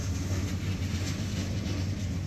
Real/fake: real